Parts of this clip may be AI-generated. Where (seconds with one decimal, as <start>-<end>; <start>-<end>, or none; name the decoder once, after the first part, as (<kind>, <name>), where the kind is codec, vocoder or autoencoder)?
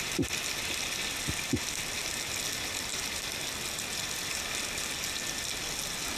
2.9-3.6 (vocoder, BigVGAN v2)